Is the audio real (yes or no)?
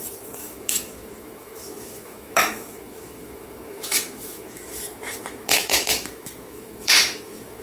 no